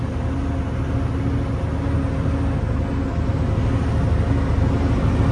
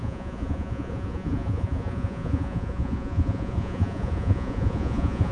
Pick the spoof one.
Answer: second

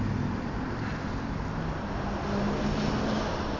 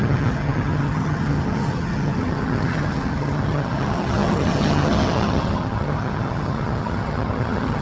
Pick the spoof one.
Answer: second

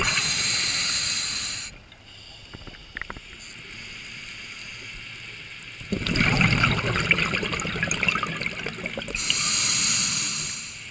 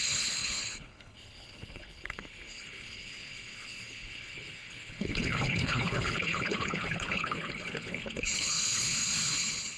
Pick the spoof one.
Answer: second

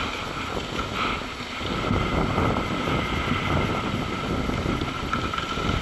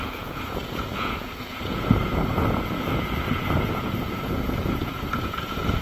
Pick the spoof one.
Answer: second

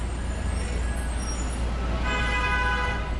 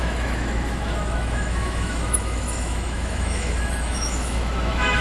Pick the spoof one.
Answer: second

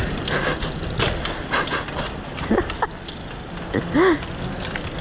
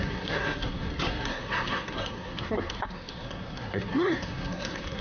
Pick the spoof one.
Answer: second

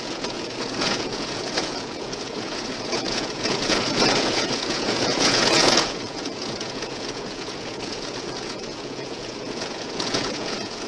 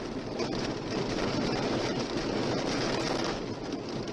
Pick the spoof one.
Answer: first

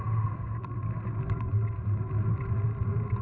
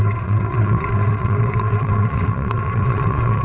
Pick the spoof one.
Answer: second